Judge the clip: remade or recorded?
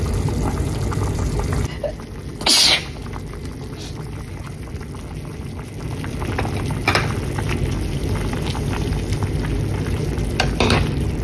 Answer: recorded